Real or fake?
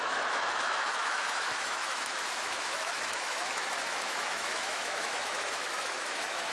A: fake